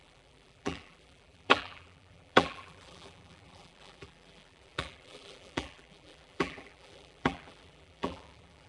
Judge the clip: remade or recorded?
remade